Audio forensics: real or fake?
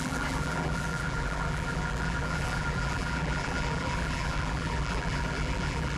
fake